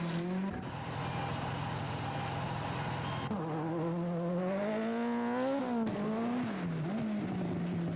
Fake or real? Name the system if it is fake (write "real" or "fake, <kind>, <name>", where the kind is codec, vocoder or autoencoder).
real